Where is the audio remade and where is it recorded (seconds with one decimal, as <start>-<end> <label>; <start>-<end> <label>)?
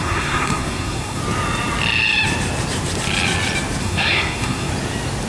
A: 0.0-1.2 remade; 1.2-3.8 recorded; 3.8-4.7 remade; 4.7-5.3 recorded